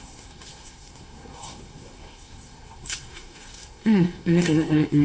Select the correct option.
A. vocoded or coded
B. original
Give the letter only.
A